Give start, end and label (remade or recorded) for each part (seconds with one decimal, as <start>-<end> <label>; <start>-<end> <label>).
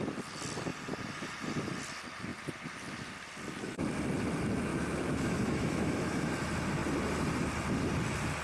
0.0-4.7 recorded; 4.7-6.3 remade; 6.3-8.4 recorded